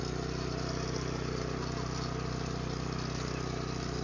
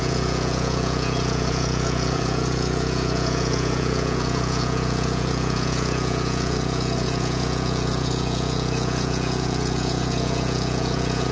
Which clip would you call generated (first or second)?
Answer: second